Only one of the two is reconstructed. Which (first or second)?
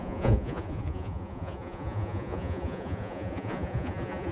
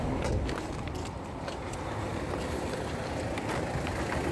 first